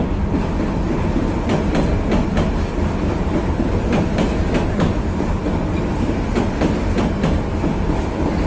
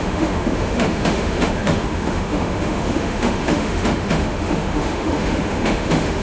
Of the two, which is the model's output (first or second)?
second